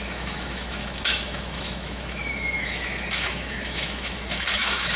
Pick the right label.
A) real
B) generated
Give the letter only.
B